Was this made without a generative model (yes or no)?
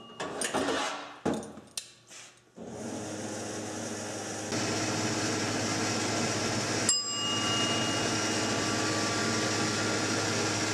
yes